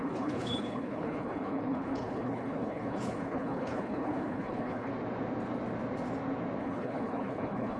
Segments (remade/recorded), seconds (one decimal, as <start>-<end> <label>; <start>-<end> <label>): 0.0-4.9 remade; 4.9-6.6 recorded; 6.6-7.8 remade